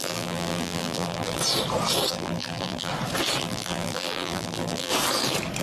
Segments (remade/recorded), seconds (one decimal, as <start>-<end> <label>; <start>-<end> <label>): 0.0-1.4 remade; 1.4-2.1 recorded; 2.1-2.9 remade; 2.9-3.4 recorded; 3.4-4.9 remade; 4.9-5.6 recorded